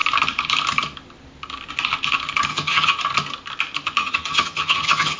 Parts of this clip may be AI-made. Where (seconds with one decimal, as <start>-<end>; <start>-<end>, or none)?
2.5-3.0; 4.0-5.2